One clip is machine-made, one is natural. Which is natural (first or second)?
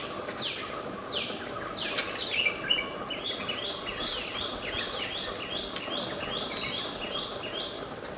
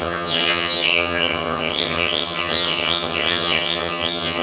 first